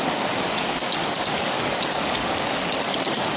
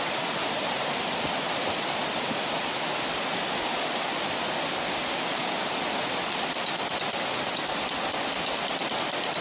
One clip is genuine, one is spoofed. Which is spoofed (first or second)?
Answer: first